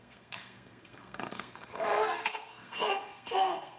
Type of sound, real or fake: fake